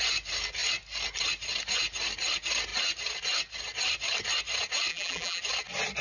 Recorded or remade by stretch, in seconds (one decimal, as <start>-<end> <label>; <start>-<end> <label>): 0.0-4.9 recorded; 4.9-5.4 remade; 5.4-6.0 recorded